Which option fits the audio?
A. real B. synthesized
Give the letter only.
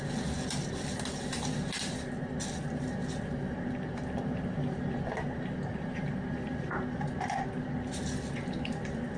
A